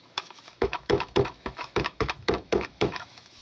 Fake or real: fake